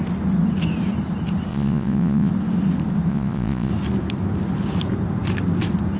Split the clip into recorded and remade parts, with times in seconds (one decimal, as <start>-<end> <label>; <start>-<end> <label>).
0.0-1.5 recorded; 1.5-2.3 remade; 2.3-3.1 recorded; 3.1-3.7 remade; 3.7-6.0 recorded